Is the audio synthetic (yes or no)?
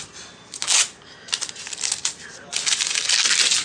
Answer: no